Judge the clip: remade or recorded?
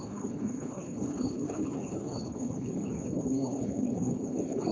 remade